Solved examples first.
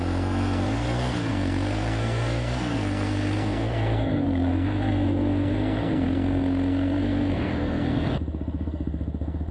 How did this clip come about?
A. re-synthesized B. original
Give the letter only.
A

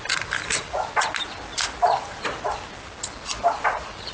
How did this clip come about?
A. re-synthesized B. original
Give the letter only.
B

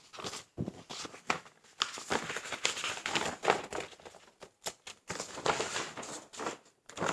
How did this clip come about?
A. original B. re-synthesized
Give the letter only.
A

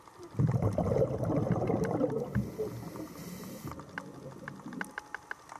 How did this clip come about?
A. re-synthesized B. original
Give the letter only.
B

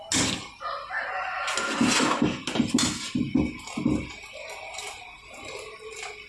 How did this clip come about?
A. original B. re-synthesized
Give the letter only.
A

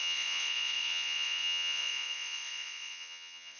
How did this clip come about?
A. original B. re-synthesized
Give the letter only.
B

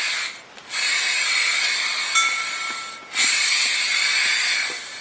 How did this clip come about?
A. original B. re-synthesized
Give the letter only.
A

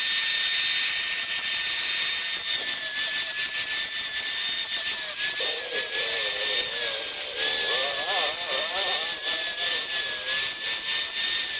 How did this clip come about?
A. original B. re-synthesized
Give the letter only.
A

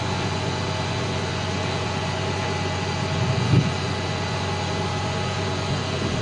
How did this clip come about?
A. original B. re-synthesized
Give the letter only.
B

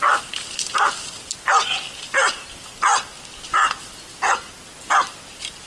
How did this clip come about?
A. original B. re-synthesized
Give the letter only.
A